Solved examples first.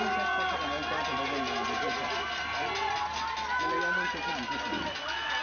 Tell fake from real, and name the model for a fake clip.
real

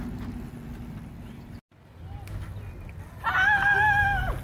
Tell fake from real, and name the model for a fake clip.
real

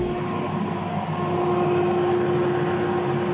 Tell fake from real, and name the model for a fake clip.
real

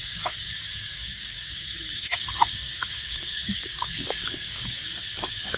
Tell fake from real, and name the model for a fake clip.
fake, codec, DAC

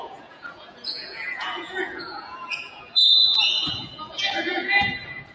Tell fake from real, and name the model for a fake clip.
fake, vocoder, Vocos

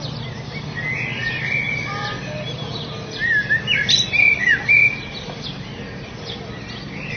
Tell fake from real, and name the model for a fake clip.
real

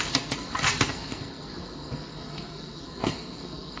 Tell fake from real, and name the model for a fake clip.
fake, codec, SNAC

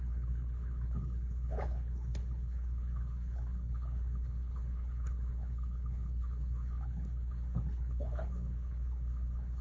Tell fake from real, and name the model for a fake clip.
fake, codec, HILCodec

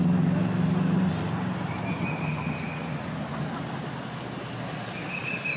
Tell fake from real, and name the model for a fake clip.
real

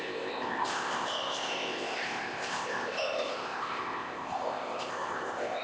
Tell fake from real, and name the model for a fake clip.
fake, codec, ZipCodec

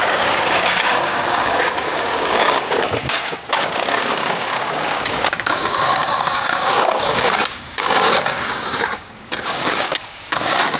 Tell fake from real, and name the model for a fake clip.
fake, codec, DAC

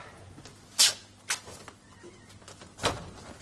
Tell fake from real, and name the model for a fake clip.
real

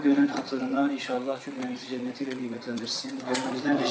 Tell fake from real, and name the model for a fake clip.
fake, vocoder, Vocos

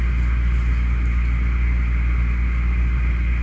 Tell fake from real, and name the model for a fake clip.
real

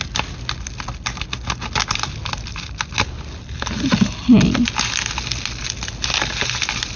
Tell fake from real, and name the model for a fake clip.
real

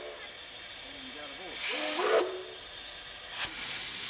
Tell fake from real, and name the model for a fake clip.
real